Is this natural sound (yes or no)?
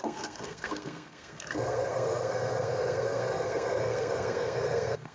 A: no